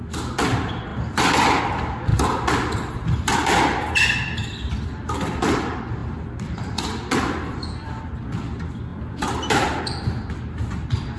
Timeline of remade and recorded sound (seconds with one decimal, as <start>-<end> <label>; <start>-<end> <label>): 0.0-6.0 recorded; 6.0-8.0 remade; 8.0-8.9 recorded; 8.9-9.8 remade; 9.8-11.2 recorded